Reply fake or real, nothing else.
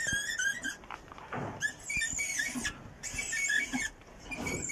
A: fake